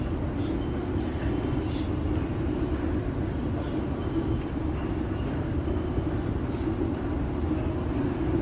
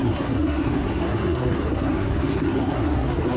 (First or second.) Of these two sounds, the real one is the first